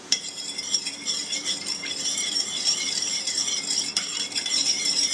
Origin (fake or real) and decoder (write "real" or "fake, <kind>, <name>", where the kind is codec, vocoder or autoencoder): fake, vocoder, BigVGAN v2